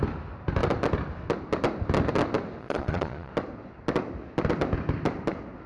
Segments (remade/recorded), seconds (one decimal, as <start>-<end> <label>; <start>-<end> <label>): 0.0-2.6 recorded; 2.6-3.3 remade; 3.3-5.7 recorded